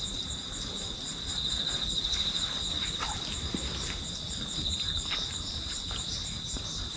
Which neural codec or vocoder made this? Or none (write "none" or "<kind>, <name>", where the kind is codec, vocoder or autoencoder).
none